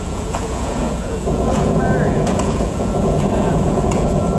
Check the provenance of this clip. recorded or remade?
remade